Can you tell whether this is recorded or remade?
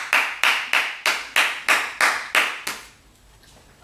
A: recorded